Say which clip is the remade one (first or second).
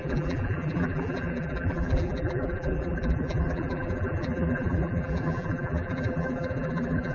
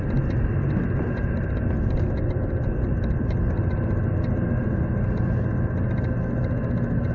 first